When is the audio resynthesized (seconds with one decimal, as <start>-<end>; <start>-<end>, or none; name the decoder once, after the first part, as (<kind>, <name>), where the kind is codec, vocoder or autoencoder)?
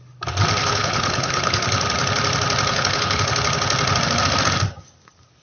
0.6-1.6 (codec, HILCodec); 2.7-3.3